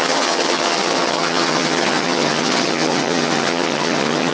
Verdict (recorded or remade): remade